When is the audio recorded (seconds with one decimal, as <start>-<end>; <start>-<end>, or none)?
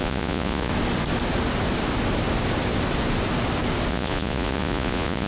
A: 0.7-3.9